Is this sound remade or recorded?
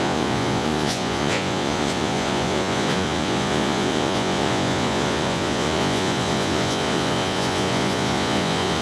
remade